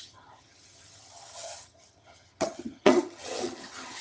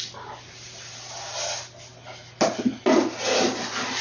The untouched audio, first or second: second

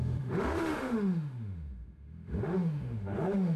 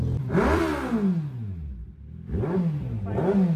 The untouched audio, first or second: second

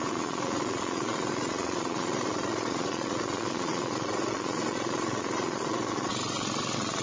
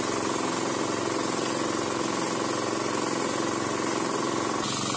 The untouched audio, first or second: second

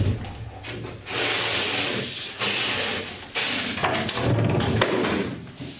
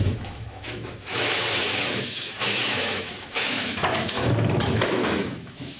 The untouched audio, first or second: first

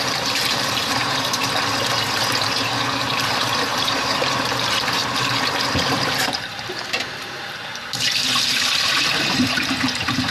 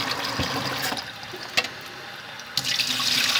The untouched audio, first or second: second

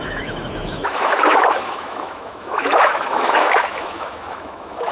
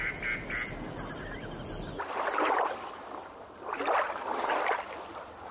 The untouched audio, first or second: second